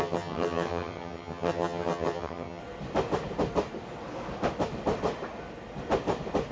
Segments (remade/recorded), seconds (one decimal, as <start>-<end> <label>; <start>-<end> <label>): 0.0-2.6 remade; 2.6-6.5 recorded